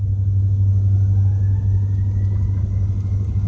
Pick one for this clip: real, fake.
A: real